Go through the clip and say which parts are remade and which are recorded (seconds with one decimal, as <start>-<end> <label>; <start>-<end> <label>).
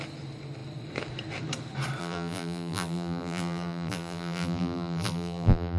0.0-2.0 recorded; 2.0-5.8 remade